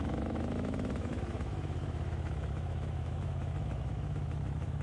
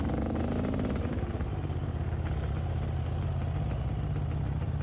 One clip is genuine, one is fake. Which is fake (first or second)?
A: first